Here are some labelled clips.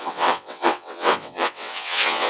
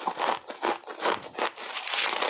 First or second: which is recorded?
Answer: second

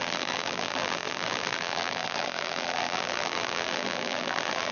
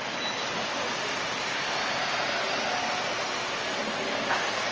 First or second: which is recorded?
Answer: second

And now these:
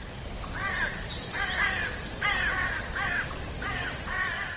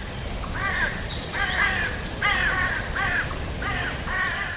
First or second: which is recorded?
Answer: first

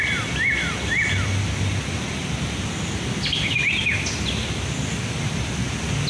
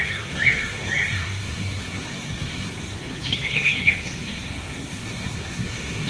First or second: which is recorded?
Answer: first